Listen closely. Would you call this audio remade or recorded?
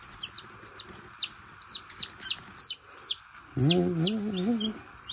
recorded